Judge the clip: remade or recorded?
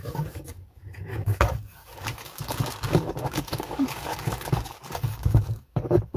remade